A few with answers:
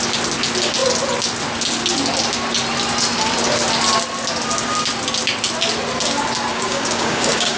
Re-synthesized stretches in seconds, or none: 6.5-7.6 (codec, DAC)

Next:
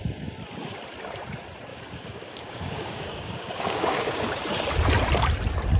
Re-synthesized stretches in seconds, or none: 1.7-4.4 (codec, DAC)